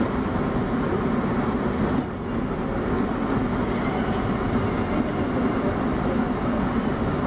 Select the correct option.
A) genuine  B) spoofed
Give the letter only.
A